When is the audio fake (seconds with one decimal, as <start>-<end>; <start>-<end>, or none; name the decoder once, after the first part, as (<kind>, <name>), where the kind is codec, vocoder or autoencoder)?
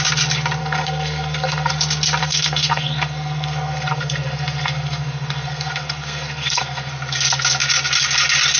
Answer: 0.6-1.7 (codec, SNAC); 2.2-6.9